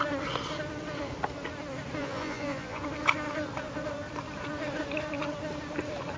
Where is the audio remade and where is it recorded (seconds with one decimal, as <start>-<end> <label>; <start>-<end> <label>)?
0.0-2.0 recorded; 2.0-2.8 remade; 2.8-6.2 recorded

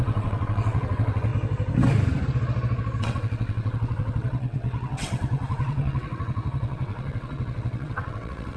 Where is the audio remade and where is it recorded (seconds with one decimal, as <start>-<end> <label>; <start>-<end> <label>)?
0.0-1.3 remade; 1.3-3.0 recorded; 3.0-8.6 remade

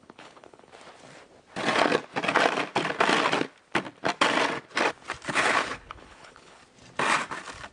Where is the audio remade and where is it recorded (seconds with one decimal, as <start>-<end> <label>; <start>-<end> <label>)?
0.0-0.7 remade; 0.7-5.3 recorded; 5.3-6.6 remade; 6.6-7.7 recorded

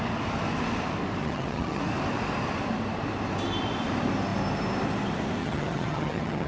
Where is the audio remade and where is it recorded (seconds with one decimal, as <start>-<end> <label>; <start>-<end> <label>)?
0.0-1.2 recorded; 1.2-1.8 remade; 1.8-5.4 recorded; 5.4-6.5 remade